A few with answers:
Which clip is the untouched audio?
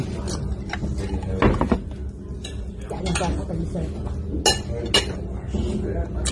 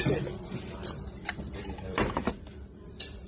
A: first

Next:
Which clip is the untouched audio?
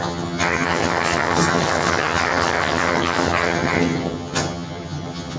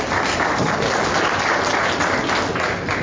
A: second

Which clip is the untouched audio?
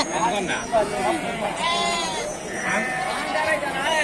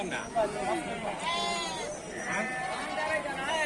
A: second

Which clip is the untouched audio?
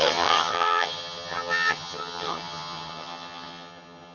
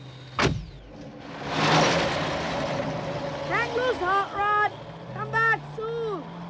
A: second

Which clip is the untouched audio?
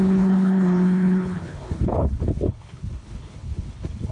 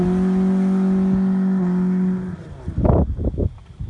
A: second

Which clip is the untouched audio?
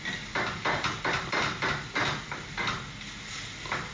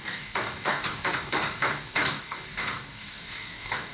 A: first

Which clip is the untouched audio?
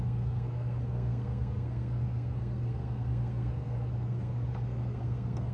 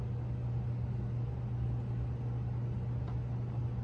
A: second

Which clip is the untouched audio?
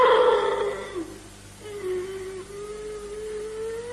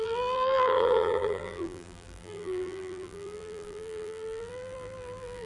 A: first